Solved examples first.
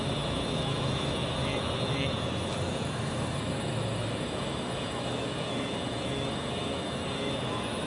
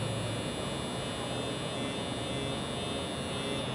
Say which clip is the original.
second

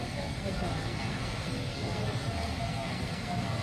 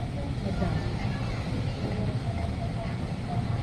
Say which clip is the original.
second